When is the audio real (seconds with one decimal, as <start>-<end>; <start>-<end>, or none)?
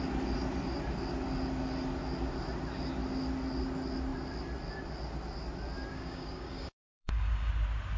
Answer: 0.0-5.9; 7.5-8.0